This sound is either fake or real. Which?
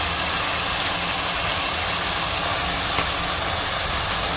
real